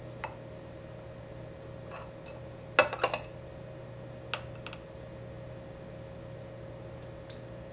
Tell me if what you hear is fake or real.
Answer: real